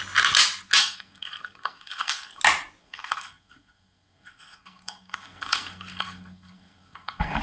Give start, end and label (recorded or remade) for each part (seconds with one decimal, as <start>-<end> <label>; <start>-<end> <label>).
0.0-0.8 recorded; 0.8-2.4 remade; 2.4-2.8 recorded; 2.8-7.4 remade